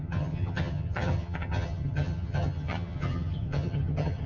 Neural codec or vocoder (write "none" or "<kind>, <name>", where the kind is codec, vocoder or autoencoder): vocoder, HiFi-GAN